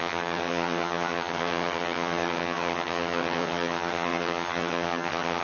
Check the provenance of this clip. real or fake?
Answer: fake